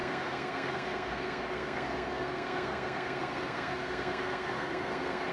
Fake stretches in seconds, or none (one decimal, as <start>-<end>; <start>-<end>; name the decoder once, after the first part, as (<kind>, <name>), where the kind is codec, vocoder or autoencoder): 0.0-5.3 (codec, SNAC)